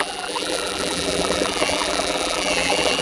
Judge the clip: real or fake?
fake